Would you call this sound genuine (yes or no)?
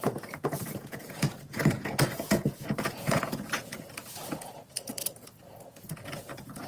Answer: no